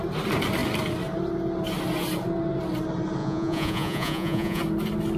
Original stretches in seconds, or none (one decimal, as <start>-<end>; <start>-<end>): 0.0-3.2; 4.6-5.2